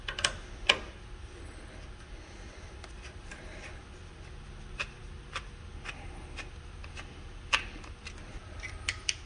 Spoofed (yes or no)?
no